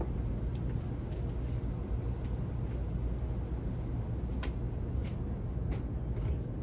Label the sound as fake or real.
real